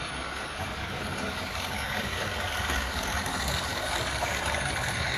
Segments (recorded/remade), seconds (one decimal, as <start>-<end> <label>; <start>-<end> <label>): 0.0-5.2 remade